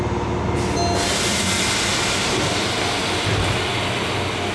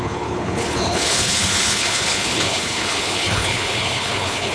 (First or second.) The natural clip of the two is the first